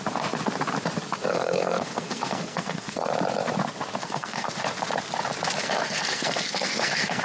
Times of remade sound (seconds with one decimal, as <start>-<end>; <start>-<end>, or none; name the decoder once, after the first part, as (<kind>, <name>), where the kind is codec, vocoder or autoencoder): 1.3-3.1 (codec, SNAC); 4.0-4.5; 5.6-7.2